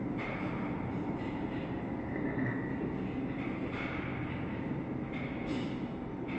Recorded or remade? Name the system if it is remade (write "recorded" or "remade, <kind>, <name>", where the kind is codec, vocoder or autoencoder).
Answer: remade, vocoder, BigVGAN v2